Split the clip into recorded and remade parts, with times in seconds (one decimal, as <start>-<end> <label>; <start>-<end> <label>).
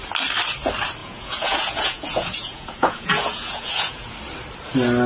0.0-1.0 recorded; 1.0-4.1 remade; 4.1-5.1 recorded